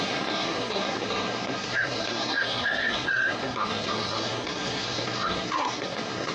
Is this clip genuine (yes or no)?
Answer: no